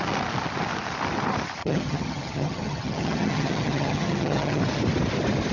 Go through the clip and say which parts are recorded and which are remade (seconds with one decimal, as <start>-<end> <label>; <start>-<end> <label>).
0.0-1.6 recorded; 1.6-4.6 remade; 4.6-5.5 recorded

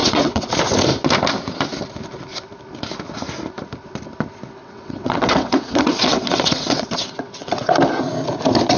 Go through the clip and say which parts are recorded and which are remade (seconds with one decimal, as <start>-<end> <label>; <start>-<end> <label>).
0.0-0.5 remade; 0.5-4.6 recorded; 4.6-7.7 remade; 7.7-8.8 recorded

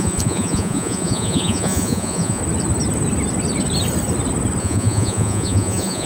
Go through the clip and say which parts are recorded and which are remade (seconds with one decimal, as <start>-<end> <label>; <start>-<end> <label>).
0.0-2.4 remade; 2.4-4.6 recorded; 4.6-6.1 remade

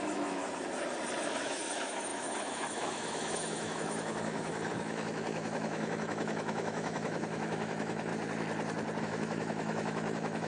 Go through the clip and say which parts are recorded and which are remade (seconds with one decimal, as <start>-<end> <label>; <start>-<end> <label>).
0.0-0.4 remade; 0.4-1.2 recorded; 1.2-8.1 remade; 8.1-9.0 recorded; 9.0-10.5 remade

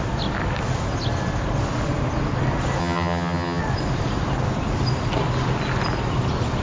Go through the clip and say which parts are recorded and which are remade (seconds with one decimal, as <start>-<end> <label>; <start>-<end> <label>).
0.0-2.8 recorded; 2.8-3.6 remade; 3.6-6.6 recorded

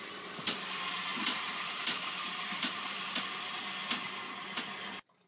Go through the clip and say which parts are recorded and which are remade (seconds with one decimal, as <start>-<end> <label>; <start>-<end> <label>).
0.0-1.1 recorded; 1.1-3.0 remade; 3.0-5.3 recorded

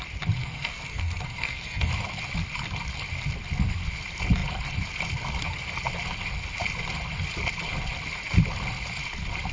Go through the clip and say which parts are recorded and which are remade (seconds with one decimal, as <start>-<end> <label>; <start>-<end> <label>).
0.0-0.4 recorded; 0.4-1.9 remade; 1.9-9.5 recorded

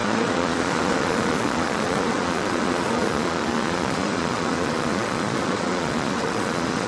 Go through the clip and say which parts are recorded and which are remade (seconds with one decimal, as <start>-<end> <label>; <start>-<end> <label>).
0.0-6.9 remade